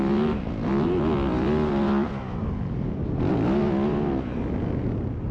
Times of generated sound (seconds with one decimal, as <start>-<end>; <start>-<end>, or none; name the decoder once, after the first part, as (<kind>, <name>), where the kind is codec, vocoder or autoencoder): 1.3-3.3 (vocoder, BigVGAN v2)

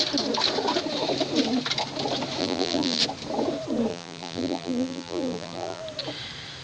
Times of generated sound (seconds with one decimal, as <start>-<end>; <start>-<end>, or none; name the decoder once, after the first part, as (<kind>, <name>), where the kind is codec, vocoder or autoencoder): 2.4-3.0 (vocoder, BigVGAN v2); 3.9-5.8

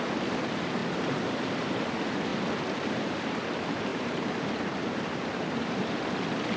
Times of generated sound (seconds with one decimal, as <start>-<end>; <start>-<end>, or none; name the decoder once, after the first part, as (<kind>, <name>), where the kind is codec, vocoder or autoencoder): 3.9-5.9 (vocoder, BigVGAN v2)

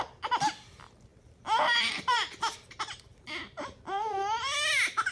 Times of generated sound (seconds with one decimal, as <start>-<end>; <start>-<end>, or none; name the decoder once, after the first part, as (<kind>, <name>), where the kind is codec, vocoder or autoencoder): 1.1-4.2 (vocoder, BigVGAN v2)